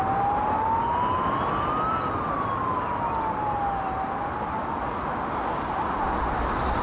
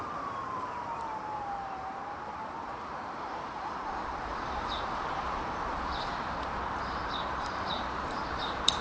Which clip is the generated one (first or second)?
second